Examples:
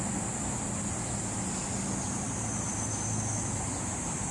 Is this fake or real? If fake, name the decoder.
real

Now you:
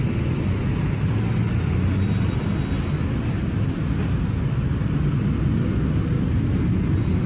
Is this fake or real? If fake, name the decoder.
real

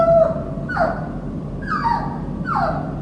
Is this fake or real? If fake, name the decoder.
real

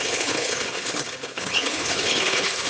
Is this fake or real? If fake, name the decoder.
fake, codec, HILCodec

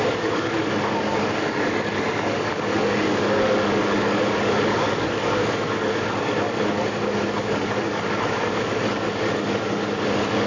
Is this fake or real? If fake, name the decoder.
fake, codec, DAC